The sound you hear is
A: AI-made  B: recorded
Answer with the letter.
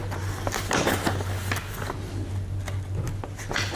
B